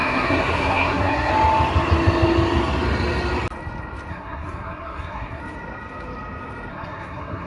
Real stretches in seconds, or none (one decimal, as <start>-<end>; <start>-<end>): 1.3-4.1; 5.4-6.7